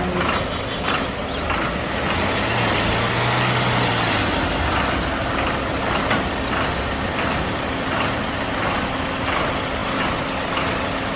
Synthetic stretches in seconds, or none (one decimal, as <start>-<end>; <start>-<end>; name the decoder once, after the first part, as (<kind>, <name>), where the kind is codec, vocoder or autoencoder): none